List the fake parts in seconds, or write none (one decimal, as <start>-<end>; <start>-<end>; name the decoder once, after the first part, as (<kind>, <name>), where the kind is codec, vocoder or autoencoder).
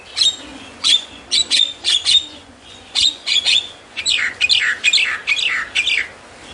0.5-4.4 (vocoder, Vocos)